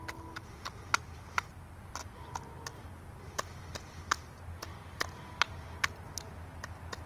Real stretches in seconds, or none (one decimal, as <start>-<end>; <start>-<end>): 0.0-7.1